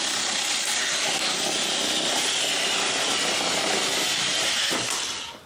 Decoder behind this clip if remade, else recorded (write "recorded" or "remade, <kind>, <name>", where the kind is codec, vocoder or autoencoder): recorded